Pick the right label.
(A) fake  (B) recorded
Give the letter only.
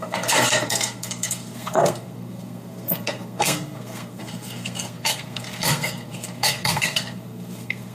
A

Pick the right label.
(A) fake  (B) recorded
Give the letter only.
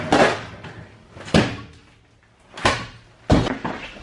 B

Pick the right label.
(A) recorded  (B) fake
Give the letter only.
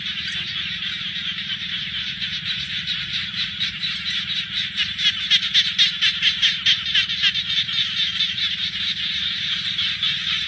A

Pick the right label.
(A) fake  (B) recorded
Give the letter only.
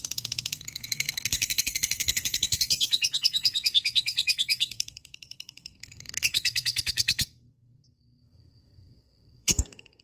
A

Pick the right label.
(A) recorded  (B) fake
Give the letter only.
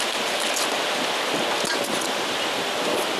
A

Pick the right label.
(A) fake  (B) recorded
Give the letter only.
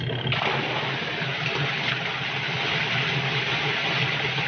B